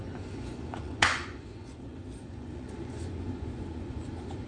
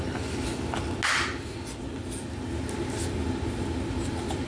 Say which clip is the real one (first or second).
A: second